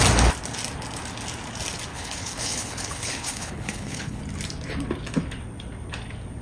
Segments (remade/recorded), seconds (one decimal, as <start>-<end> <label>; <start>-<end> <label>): 0.0-1.9 recorded; 1.9-4.2 remade; 4.2-6.4 recorded